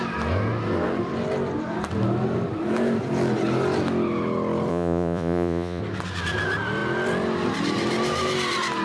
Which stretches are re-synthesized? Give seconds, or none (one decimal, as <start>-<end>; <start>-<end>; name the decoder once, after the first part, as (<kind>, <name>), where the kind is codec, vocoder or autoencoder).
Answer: 4.7-5.8 (vocoder, Vocos)